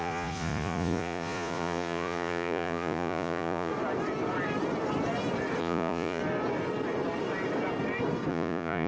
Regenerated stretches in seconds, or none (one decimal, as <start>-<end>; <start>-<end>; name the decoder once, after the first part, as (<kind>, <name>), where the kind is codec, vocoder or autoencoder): 0.0-3.7 (vocoder, Vocos); 5.6-6.2; 8.3-8.9